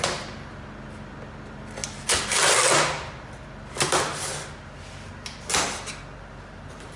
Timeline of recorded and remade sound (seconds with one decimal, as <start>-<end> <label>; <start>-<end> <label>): 0.0-7.0 recorded